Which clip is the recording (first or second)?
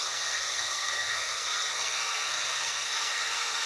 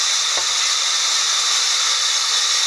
second